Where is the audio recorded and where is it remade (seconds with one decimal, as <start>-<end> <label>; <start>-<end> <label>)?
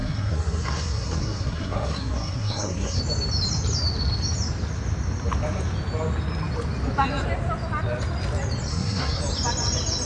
0.0-3.0 remade; 3.0-8.7 recorded; 8.7-9.2 remade; 9.2-10.1 recorded